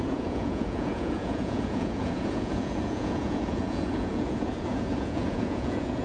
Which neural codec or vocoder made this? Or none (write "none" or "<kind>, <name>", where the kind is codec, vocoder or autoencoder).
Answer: vocoder, Vocos